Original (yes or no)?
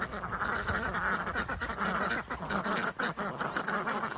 yes